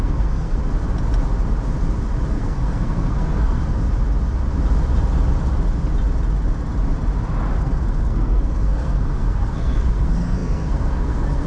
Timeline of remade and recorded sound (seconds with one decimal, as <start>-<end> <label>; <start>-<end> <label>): 0.0-0.6 remade; 0.6-2.3 recorded; 2.3-3.6 remade; 3.6-7.6 recorded; 7.6-11.5 remade